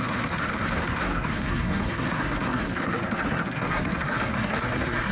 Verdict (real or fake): fake